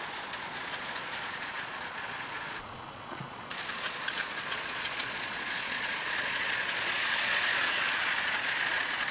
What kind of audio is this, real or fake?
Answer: fake